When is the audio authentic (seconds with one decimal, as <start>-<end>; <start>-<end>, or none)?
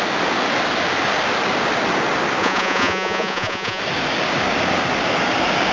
0.0-2.4; 3.8-5.7